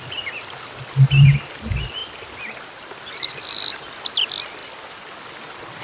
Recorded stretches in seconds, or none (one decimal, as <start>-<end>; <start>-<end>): 0.0-5.8